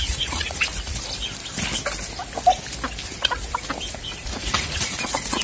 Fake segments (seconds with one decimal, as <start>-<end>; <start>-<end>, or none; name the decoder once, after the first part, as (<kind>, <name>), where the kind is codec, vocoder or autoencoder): 0.0-0.7 (vocoder, Vocos); 3.9-5.4